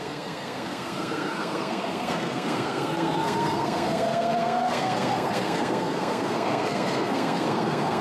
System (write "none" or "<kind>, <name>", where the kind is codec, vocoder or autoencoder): codec, SNAC